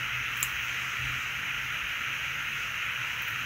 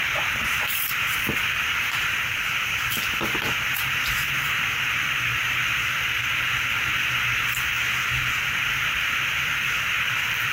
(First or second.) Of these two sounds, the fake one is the second